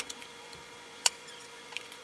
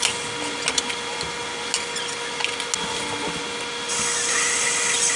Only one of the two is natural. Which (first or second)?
second